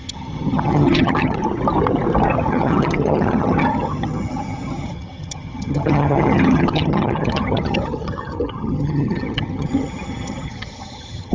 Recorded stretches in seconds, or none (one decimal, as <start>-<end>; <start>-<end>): 1.4-2.5